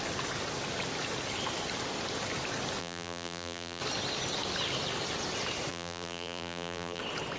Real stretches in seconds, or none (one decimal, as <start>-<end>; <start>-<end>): 0.0-2.8; 3.8-5.7; 7.0-7.4